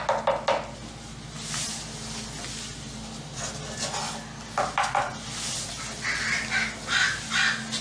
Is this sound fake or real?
real